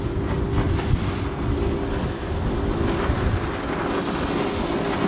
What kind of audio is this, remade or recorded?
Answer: recorded